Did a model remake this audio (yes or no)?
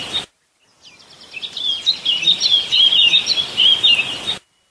no